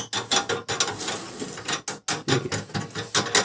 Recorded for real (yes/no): yes